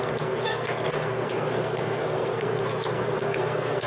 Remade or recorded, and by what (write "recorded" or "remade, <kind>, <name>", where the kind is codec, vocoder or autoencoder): remade, codec, SNAC